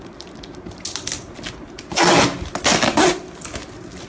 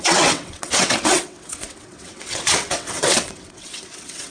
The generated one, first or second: second